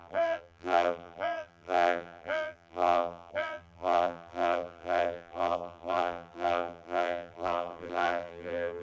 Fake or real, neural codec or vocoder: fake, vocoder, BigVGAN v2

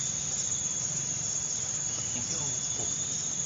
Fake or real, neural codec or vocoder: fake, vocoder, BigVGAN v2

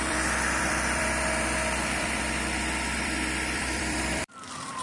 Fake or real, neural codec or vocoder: fake, vocoder, BigVGAN v2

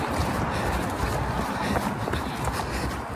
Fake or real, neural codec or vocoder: fake, vocoder, BigVGAN v2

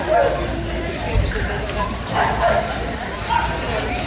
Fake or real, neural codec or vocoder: real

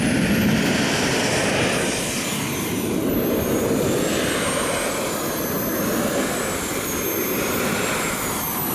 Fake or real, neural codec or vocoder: real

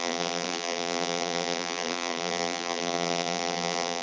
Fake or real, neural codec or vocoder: fake, vocoder, BigVGAN v2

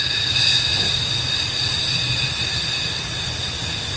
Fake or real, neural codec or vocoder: real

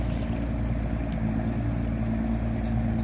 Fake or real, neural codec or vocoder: real